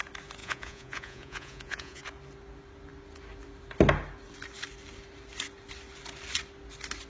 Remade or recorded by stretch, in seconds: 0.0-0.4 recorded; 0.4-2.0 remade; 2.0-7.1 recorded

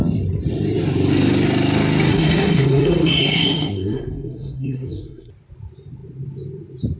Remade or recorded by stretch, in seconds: 0.0-2.1 recorded; 2.1-5.3 remade; 5.3-7.0 recorded

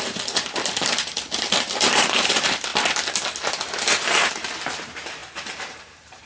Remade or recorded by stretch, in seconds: 0.0-2.7 remade; 2.7-3.9 recorded; 3.9-6.3 remade

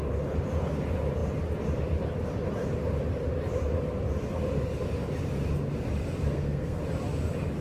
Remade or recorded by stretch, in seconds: 0.0-6.3 recorded; 6.3-6.8 remade; 6.8-7.6 recorded